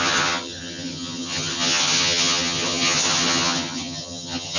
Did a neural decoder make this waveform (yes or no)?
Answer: yes